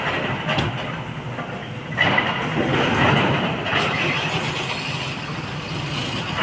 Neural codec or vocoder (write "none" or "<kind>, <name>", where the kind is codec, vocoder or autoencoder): none